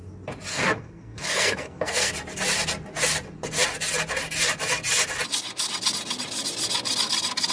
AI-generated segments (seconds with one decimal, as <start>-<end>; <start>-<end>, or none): 0.5-2.1